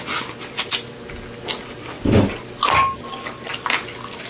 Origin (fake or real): real